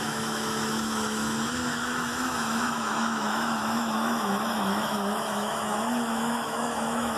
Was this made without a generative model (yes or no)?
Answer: no